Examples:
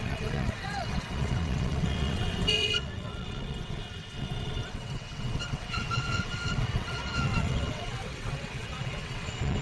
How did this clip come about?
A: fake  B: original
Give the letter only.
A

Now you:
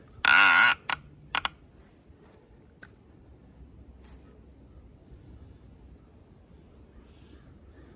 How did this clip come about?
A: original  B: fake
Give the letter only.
A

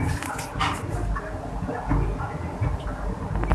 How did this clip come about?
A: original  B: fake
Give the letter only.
A